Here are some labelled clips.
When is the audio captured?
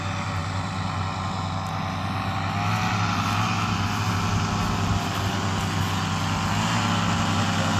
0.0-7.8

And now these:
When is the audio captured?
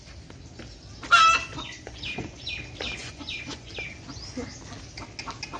0.0-1.5; 2.5-3.0; 3.7-5.6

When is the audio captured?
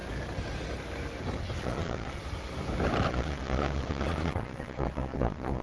0.0-1.6; 2.2-3.1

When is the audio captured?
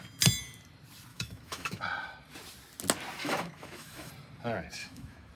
0.0-1.1; 1.8-3.2; 4.1-4.8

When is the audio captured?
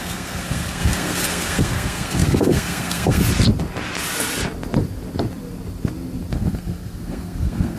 3.2-6.3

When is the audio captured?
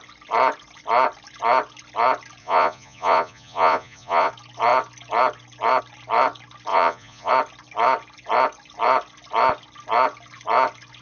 0.0-2.4; 4.3-6.7; 7.3-11.0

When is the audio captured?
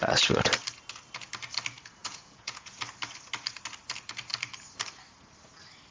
0.0-2.0; 2.8-5.9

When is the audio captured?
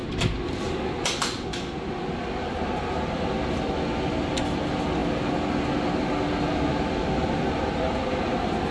0.0-8.7